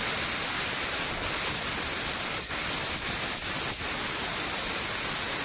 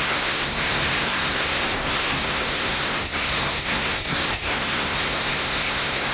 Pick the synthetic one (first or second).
second